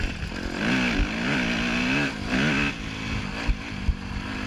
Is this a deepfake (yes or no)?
no